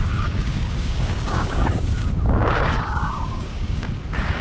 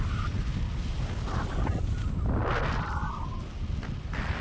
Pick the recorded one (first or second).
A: second